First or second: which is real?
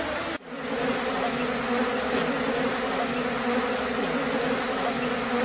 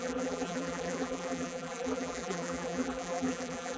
first